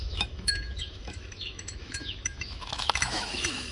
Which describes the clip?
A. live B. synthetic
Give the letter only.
B